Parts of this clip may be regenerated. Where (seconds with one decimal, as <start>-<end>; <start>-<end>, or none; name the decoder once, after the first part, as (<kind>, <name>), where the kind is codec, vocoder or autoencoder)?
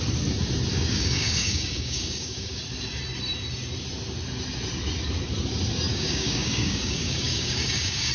0.7-2.6 (codec, DAC); 5.9-8.1